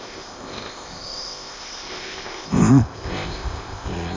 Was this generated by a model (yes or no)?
yes